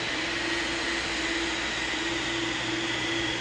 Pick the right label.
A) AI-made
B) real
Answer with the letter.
B